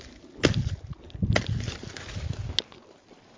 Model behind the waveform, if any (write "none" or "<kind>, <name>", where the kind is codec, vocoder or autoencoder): none